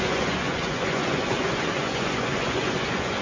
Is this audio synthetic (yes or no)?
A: yes